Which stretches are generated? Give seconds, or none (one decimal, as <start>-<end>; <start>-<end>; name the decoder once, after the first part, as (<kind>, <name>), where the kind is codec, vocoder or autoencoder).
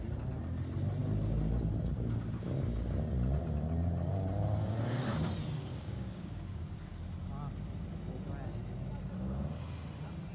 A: 5.7-7.0 (codec, DAC)